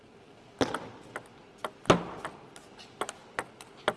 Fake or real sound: real